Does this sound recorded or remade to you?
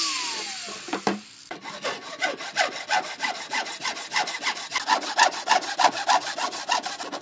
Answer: recorded